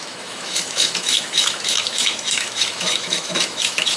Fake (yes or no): yes